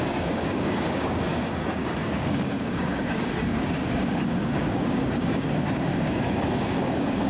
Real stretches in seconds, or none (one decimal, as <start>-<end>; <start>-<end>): none